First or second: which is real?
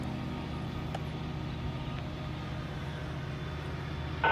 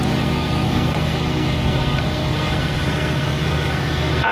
first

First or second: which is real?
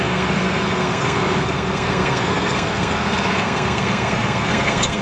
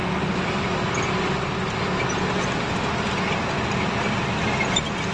second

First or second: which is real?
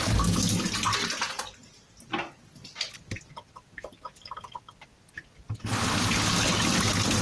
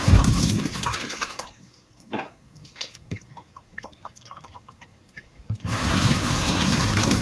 first